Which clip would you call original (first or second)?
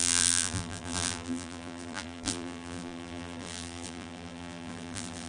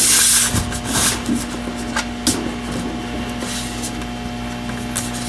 second